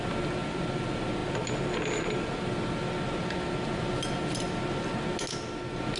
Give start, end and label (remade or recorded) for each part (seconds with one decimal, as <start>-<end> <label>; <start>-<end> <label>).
0.0-6.0 recorded